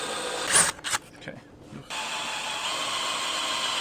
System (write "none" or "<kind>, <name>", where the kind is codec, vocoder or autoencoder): none